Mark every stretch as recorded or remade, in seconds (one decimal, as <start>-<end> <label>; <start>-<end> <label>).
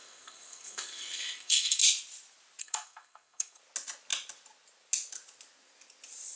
0.0-1.8 remade; 1.8-2.6 recorded; 2.6-3.6 remade; 3.6-6.4 recorded